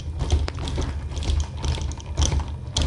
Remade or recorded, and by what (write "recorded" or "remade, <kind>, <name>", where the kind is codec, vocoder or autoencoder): recorded